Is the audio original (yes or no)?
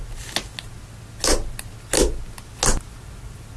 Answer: yes